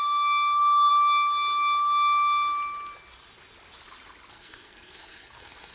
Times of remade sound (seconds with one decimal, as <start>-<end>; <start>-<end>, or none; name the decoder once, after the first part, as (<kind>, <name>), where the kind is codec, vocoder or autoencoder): 0.0-0.9 (codec, SNAC); 4.3-5.7